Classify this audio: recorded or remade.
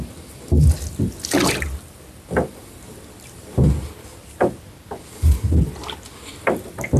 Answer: recorded